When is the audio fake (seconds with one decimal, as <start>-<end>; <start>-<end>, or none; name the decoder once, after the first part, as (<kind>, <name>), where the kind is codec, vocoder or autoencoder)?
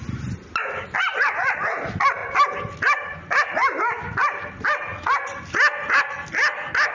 none